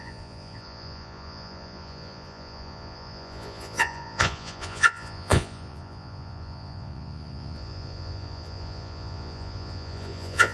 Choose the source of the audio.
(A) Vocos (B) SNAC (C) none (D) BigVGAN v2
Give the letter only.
A